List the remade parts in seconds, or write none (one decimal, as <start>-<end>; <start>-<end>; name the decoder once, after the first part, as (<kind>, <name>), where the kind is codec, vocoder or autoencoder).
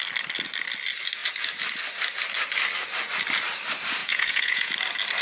4.0-4.7 (vocoder, Vocos)